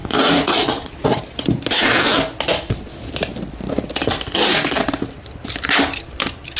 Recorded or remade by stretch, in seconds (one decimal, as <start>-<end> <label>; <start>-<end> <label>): 0.0-1.2 remade; 1.2-6.6 recorded